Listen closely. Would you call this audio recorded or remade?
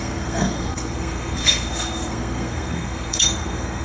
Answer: remade